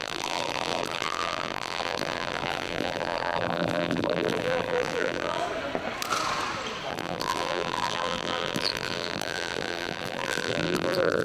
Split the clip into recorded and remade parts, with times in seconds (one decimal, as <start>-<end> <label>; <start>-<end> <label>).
0.0-5.4 remade; 5.4-6.9 recorded; 6.9-11.2 remade